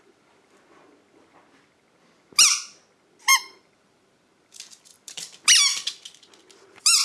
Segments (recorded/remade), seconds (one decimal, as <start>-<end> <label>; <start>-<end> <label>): 0.0-3.3 recorded; 3.3-4.5 remade; 4.5-4.9 recorded; 4.9-5.6 remade; 5.6-7.0 recorded